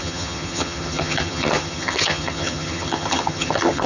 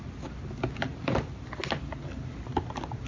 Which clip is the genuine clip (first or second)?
second